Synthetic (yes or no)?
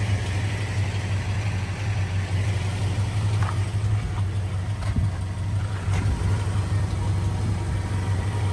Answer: no